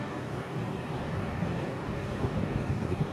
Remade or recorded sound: remade